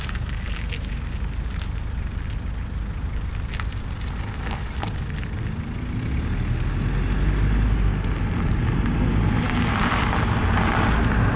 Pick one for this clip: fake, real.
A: real